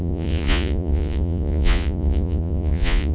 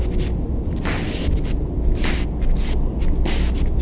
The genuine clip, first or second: second